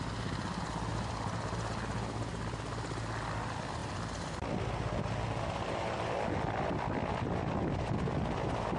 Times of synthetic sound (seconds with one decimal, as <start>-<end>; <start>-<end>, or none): none